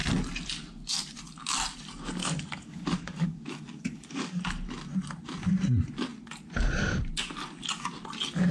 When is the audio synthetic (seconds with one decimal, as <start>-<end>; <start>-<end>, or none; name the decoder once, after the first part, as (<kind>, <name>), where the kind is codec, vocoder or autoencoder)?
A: 2.2-4.4 (codec, DAC)